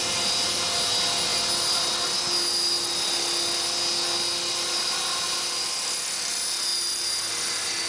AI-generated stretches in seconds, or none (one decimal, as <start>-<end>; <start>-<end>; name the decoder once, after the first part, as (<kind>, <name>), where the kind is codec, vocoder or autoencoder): none